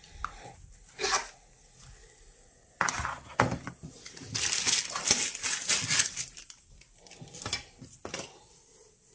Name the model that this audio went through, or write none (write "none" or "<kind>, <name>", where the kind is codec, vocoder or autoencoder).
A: none